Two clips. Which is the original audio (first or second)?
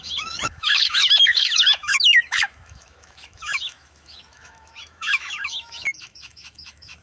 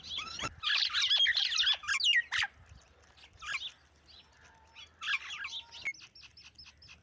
second